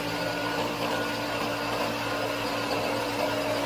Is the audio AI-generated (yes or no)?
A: no